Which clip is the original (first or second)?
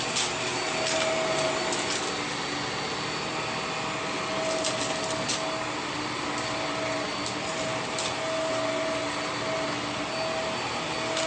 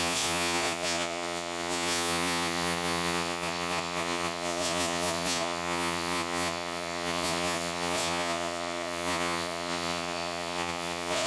first